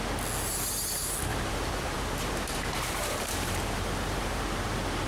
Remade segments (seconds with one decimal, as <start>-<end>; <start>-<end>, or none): 1.3-4.4

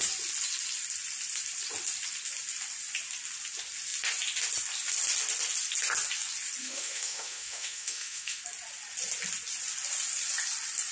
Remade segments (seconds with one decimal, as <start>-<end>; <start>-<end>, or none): 6.6-8.4

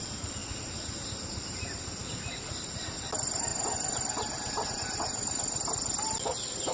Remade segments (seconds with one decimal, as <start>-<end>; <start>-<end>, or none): 0.0-0.4; 1.1-3.5; 5.6-6.7

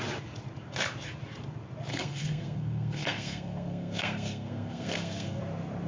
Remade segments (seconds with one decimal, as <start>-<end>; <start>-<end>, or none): 1.9-5.4

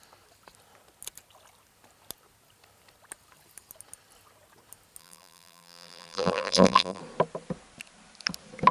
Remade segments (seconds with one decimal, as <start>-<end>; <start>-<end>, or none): 5.0-7.0

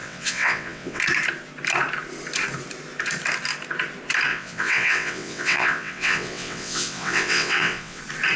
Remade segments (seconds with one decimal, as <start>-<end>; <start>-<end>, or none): 0.0-1.0; 4.3-8.0

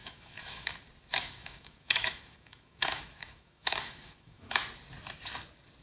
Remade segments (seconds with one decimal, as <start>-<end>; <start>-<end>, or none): 0.0-0.7; 1.1-4.6

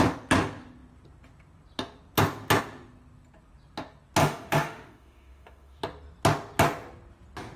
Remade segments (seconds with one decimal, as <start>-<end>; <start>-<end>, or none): 4.2-5.8